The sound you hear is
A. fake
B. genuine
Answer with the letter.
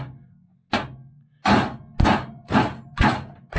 B